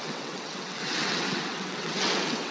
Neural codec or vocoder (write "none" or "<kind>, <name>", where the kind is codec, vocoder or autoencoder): vocoder, WaveNeXt